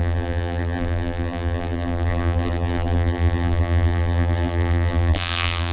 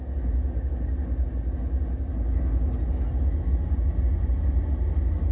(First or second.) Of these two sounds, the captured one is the second